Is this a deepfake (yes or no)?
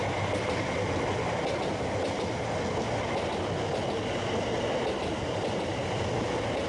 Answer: no